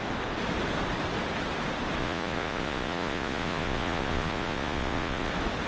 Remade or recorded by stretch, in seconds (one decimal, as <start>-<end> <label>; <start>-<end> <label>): 0.0-2.0 recorded; 2.0-5.3 remade; 5.3-5.7 recorded